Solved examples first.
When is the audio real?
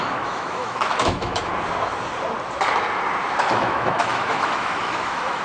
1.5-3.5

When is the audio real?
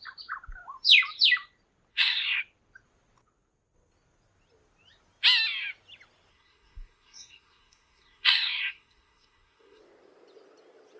0.0-1.9; 2.4-6.3; 9.8-11.0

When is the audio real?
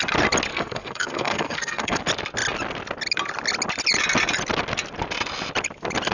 0.0-0.5; 2.0-6.1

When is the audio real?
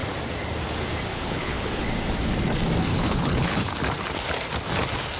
0.0-1.1; 1.8-2.9; 3.7-5.2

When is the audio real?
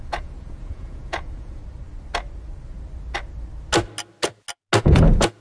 1.6-4.8